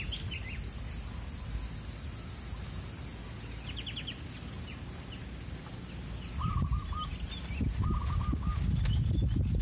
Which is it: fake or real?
real